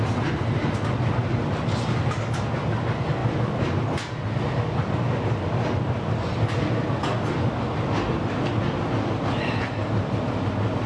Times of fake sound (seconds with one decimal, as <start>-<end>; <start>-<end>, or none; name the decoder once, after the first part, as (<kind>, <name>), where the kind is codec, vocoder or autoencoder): 3.2-5.4 (vocoder, BigVGAN v2); 9.8-10.9